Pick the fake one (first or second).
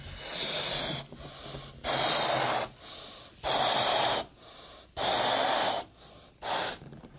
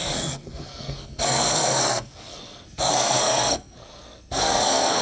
second